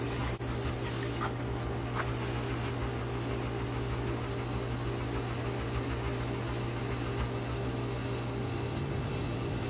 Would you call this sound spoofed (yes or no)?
no